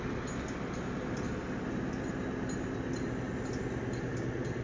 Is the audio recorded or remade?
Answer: recorded